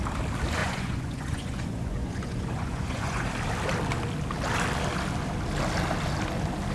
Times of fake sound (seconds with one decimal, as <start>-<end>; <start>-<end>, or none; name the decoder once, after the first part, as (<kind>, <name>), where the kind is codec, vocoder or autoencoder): 0.6-3.3 (vocoder, Vocos)